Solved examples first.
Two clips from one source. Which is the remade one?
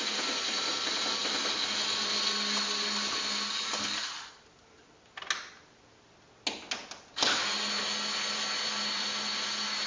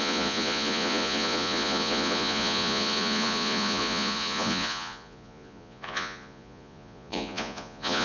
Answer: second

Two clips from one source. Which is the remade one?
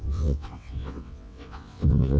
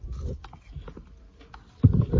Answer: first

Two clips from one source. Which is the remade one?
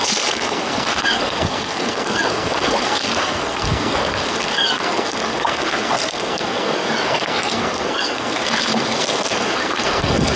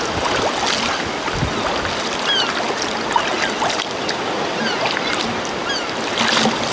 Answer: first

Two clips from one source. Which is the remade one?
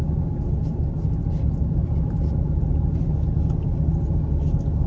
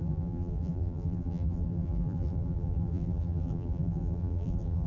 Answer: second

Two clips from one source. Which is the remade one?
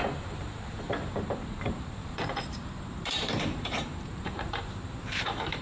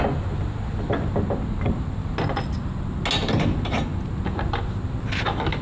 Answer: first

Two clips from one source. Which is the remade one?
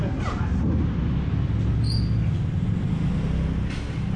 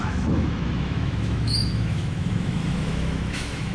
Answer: second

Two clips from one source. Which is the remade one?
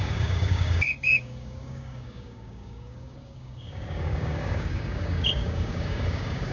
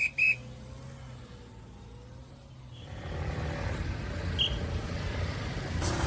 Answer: first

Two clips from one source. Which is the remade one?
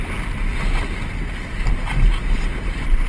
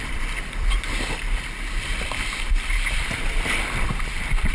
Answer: second